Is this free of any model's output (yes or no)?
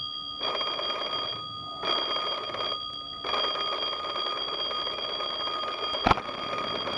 yes